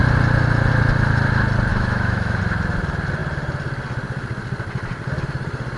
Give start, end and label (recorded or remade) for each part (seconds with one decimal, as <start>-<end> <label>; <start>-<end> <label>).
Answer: 0.0-1.7 recorded; 1.7-2.4 remade; 2.4-5.8 recorded